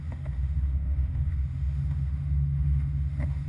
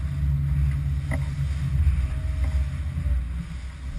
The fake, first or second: first